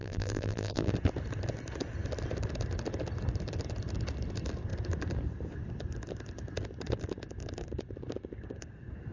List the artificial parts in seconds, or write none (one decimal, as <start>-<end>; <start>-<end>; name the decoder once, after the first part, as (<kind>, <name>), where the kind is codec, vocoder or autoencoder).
0.0-0.9 (vocoder, BigVGAN v2)